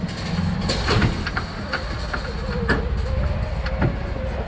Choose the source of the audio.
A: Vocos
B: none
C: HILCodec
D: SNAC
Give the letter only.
B